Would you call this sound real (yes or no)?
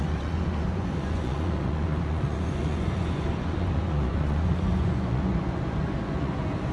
no